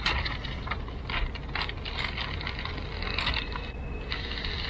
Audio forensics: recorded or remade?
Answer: recorded